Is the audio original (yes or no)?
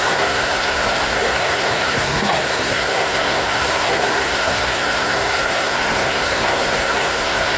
no